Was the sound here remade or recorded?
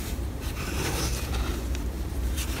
recorded